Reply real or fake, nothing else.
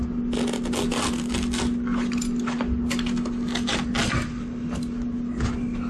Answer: real